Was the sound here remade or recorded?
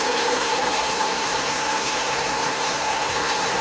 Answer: remade